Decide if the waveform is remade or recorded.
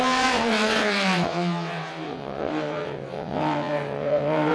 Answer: remade